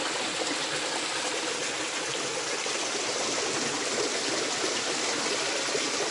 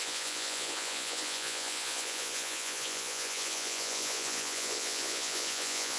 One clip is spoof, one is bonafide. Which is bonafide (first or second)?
first